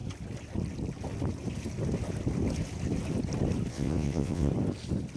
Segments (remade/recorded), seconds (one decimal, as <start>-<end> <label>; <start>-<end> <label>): 0.0-3.7 recorded; 3.7-4.5 remade; 4.5-5.2 recorded